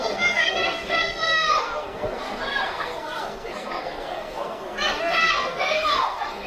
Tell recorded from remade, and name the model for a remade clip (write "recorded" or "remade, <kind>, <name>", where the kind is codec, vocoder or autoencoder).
remade, codec, SNAC